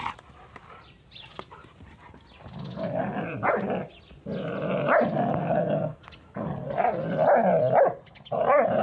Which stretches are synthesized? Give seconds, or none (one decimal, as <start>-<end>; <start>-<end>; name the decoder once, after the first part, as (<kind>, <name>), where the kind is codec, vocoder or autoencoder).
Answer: 5.4-6.0 (codec, SNAC)